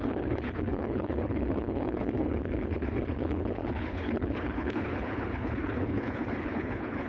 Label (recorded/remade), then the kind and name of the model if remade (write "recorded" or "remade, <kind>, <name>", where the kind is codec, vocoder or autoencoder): remade, codec, HILCodec